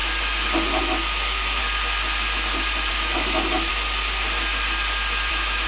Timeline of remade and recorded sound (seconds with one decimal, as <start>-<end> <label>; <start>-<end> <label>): 0.0-0.8 recorded; 0.8-1.6 remade; 1.6-2.9 recorded; 2.9-3.7 remade; 3.7-5.3 recorded; 5.3-5.7 remade